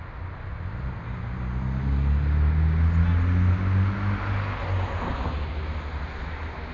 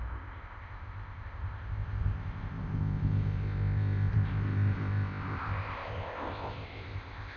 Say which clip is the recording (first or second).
first